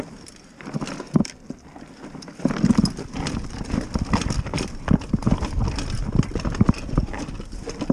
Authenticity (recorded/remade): recorded